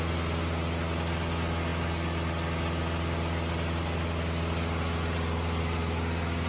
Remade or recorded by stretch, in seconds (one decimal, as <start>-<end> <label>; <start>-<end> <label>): 0.0-6.5 recorded